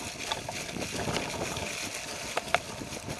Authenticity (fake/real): real